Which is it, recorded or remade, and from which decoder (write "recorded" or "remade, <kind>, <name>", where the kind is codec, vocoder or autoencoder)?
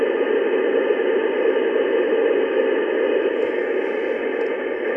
recorded